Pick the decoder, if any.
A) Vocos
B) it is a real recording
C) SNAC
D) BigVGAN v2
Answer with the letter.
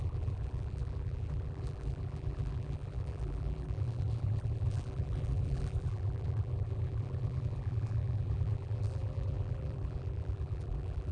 D